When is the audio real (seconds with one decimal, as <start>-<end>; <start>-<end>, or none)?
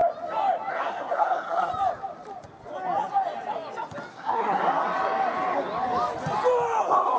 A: 0.0-0.7; 1.7-4.1; 4.6-6.8